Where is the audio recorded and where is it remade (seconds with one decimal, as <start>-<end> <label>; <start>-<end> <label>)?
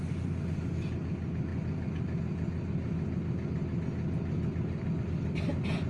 0.0-5.9 recorded